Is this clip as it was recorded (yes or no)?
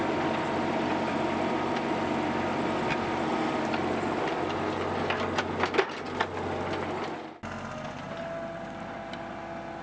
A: yes